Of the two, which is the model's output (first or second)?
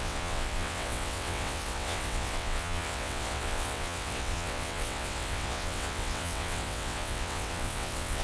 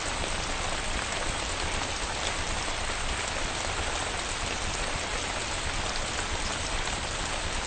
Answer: first